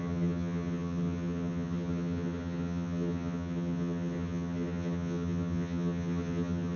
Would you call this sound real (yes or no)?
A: no